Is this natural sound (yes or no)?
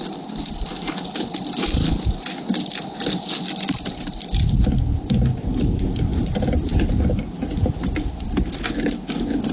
yes